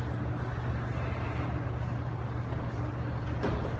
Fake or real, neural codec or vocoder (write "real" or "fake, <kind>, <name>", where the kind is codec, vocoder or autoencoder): real